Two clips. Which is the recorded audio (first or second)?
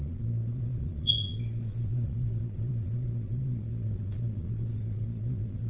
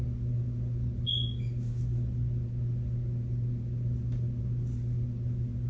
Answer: second